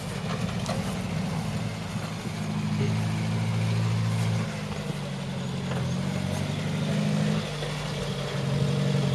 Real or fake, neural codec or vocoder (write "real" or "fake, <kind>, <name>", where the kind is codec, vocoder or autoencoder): real